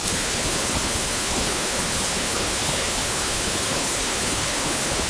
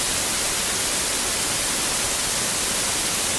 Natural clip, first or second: second